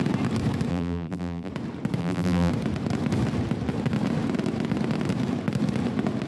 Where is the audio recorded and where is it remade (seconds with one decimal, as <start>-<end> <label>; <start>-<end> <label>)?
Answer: 0.0-0.7 recorded; 0.7-1.5 remade; 1.5-2.0 recorded; 2.0-2.5 remade; 2.5-6.3 recorded